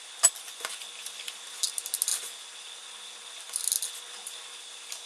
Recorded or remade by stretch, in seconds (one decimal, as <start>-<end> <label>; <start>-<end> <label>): 0.0-5.1 recorded